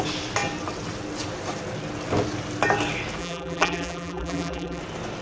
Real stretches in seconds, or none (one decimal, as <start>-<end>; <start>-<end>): 0.0-3.2; 4.8-5.2